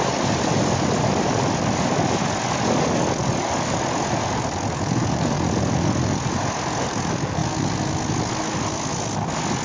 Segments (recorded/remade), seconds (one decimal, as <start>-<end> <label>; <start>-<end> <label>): 0.0-9.6 recorded